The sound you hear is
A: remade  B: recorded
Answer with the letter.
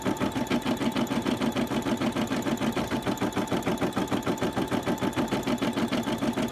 B